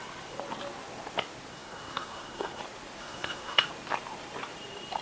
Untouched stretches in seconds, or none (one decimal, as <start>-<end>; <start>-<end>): 0.0-1.5; 2.6-3.0; 3.7-5.0